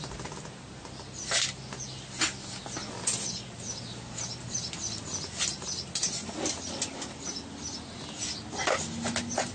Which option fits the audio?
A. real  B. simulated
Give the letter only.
A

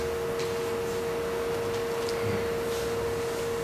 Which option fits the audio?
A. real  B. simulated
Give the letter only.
A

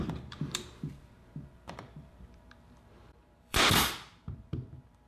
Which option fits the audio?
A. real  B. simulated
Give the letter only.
B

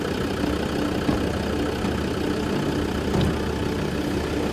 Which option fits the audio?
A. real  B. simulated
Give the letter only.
A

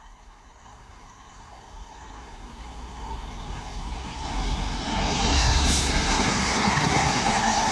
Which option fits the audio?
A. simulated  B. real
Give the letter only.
A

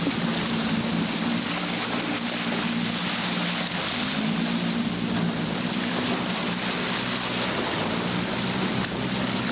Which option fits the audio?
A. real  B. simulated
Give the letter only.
A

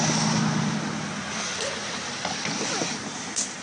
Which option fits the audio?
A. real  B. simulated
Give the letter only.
A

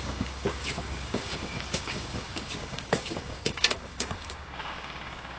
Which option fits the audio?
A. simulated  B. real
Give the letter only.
A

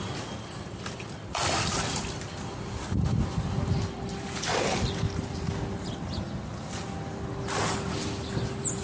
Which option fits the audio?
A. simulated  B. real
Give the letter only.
B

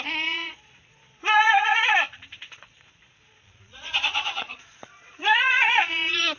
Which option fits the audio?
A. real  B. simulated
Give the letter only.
B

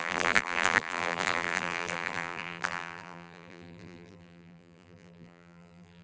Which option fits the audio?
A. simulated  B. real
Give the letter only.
A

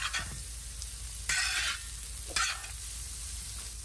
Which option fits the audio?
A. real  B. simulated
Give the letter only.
A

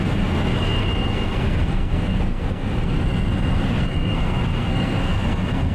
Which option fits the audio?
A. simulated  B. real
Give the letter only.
A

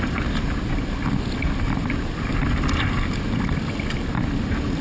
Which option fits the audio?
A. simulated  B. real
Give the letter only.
B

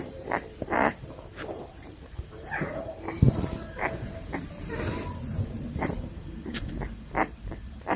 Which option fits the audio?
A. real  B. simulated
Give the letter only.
B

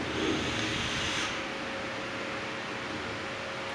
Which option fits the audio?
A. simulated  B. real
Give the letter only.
B